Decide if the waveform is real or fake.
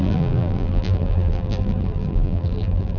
fake